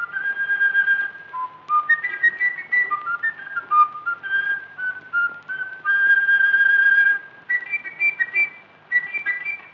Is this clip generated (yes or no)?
no